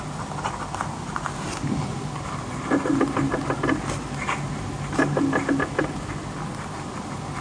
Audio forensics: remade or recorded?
recorded